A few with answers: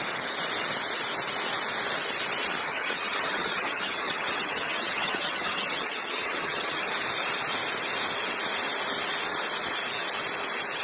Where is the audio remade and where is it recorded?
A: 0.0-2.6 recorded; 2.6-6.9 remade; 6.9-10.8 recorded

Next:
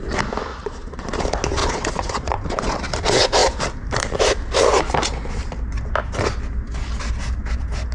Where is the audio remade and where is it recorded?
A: 0.0-0.5 recorded; 0.5-1.2 remade; 1.2-1.6 recorded; 1.6-2.8 remade; 2.8-7.9 recorded

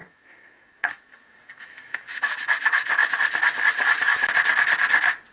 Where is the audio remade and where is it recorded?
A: 0.0-3.1 remade; 3.1-5.3 recorded